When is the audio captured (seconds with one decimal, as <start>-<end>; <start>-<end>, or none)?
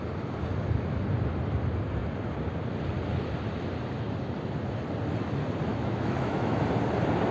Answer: 0.0-5.7; 6.6-7.3